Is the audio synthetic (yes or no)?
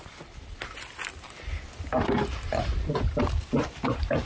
no